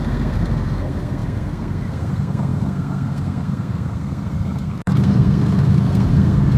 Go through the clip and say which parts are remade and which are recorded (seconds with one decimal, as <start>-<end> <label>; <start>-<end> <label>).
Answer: 0.0-6.6 remade